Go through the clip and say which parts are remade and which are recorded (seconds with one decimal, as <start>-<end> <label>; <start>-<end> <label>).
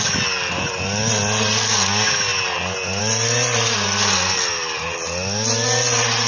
0.0-6.3 recorded